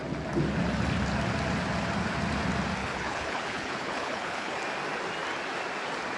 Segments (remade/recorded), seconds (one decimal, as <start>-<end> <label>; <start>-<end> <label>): 0.0-2.8 recorded; 2.8-4.6 remade; 4.6-6.2 recorded